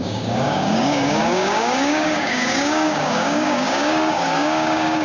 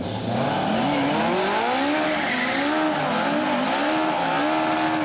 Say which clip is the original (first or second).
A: second